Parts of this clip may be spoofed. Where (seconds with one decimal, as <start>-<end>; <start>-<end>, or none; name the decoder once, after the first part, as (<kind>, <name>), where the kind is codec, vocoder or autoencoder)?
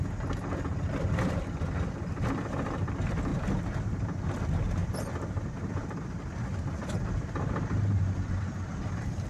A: 4.8-8.7 (vocoder, BigVGAN v2)